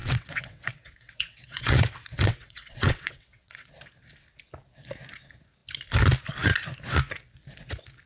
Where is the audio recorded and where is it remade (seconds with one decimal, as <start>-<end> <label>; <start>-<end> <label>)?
0.0-3.7 remade; 3.7-8.1 recorded